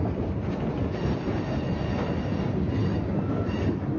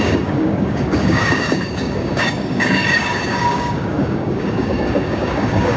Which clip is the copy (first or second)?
second